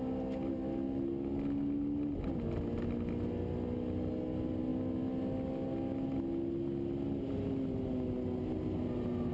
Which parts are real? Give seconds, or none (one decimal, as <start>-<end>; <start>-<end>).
0.0-9.3